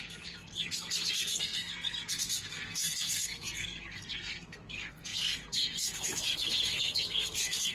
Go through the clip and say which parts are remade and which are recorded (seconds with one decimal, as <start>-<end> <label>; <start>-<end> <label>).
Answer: 0.0-7.7 remade

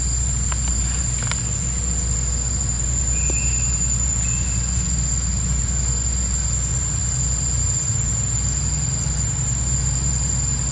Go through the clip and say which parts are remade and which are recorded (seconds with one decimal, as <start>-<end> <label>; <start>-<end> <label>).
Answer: 0.0-10.7 recorded

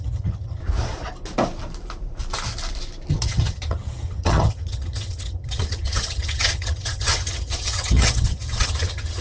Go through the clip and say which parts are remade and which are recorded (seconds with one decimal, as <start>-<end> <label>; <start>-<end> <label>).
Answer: 0.0-0.6 remade; 0.6-3.1 recorded; 3.1-9.2 remade

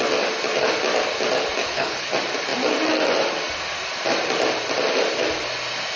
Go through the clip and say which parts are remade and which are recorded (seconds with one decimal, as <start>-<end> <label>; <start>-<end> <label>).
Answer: 0.0-1.6 recorded; 1.6-2.1 remade; 2.1-6.0 recorded